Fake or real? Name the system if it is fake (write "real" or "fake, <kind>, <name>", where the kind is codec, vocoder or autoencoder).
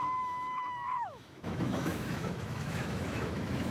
fake, autoencoder, DAC-VAE